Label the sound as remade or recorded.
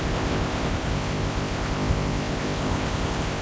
remade